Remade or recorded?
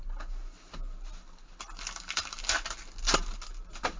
recorded